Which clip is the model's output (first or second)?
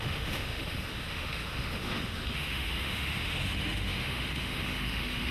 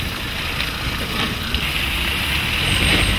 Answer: first